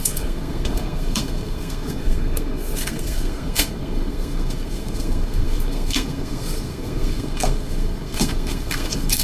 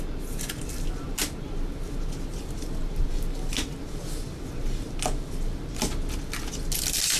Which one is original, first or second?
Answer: second